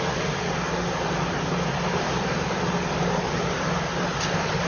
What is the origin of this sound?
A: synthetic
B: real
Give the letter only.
B